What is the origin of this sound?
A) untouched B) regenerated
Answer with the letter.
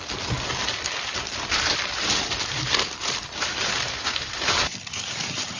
B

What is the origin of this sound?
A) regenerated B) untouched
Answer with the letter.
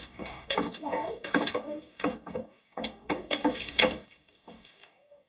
A